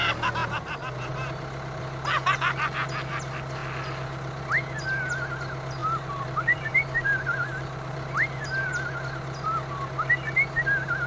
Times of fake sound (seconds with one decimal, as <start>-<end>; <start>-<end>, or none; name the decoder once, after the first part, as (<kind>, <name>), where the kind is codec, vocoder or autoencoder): 5.8-8.7 (vocoder, BigVGAN v2)